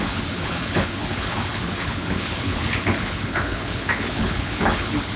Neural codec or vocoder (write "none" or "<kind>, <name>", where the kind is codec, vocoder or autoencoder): codec, HILCodec